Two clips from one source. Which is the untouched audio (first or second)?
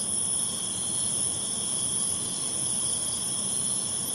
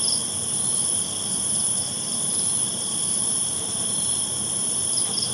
first